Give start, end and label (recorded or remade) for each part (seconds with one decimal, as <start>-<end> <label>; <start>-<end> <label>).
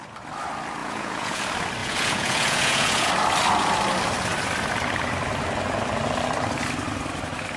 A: 0.0-0.8 recorded; 0.8-1.4 remade; 1.4-1.8 recorded; 1.8-3.1 remade; 3.1-7.6 recorded